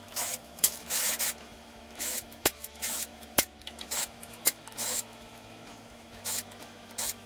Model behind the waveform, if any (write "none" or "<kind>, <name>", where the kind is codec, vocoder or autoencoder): autoencoder, DAC-VAE